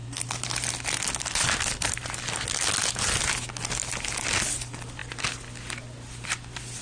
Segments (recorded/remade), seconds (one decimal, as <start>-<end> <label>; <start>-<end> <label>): 0.0-6.8 recorded